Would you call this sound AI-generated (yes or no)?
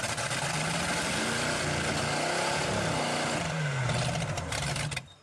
no